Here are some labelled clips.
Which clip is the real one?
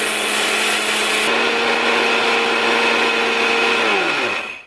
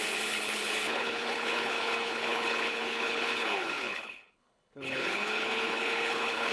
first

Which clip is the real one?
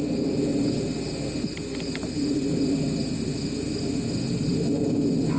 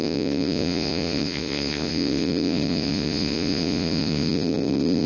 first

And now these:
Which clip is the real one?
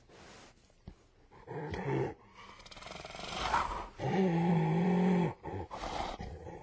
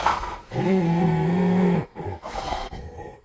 first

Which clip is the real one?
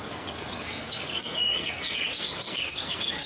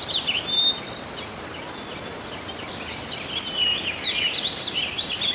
second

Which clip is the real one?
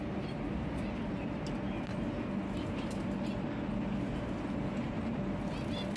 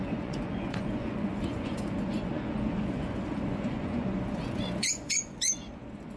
first